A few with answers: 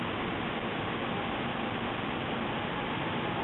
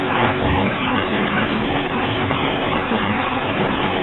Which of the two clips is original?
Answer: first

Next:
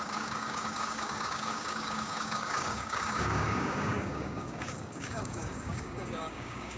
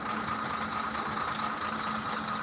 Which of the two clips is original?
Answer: second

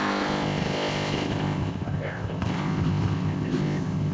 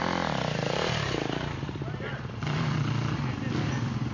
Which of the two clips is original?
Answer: second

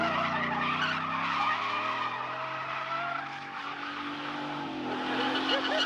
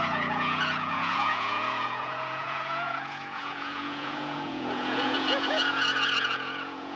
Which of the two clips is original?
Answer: first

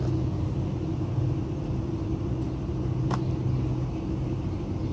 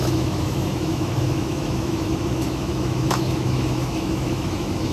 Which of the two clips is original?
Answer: first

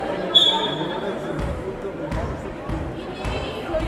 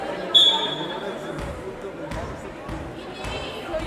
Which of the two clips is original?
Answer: second